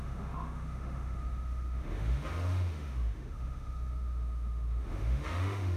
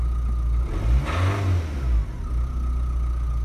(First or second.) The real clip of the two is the second